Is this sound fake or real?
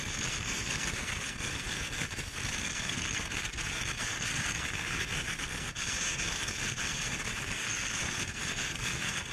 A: fake